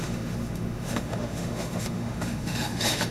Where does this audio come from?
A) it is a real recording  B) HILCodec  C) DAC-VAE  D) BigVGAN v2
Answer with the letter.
C